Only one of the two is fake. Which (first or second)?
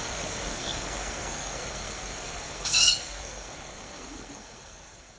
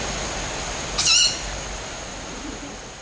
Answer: first